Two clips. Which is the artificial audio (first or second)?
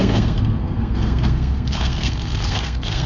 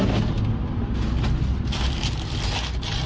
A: first